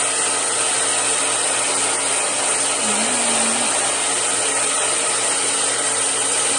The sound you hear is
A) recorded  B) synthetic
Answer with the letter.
A